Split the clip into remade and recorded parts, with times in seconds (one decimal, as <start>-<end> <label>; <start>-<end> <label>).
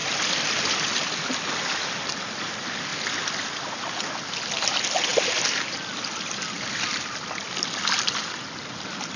0.0-9.2 recorded